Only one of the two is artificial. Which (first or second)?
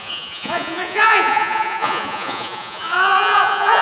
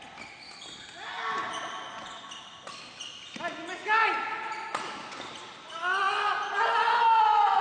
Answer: first